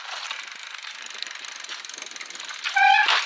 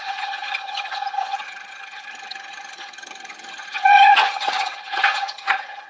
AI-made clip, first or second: second